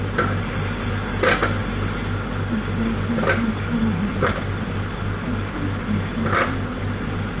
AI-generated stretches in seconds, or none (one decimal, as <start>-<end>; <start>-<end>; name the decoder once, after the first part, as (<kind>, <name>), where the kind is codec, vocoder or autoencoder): none